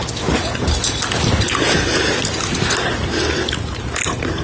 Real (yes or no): yes